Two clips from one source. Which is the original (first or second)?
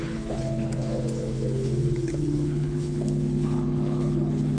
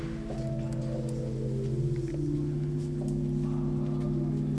second